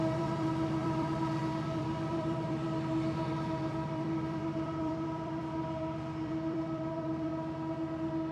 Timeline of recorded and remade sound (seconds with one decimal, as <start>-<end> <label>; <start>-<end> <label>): 0.0-7.3 remade; 7.3-8.3 recorded